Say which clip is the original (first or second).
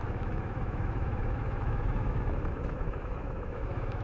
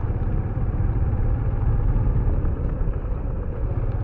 second